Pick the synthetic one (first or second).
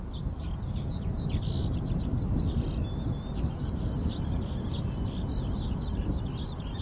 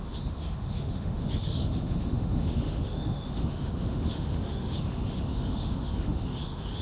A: second